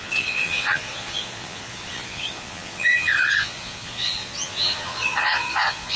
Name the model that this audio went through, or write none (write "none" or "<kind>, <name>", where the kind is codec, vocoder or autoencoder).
vocoder, Vocos